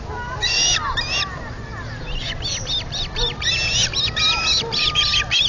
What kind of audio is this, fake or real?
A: real